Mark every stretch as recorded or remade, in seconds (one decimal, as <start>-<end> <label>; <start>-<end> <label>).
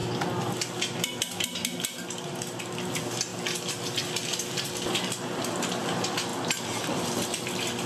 0.0-7.9 recorded